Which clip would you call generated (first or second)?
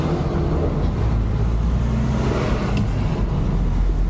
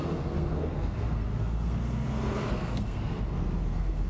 second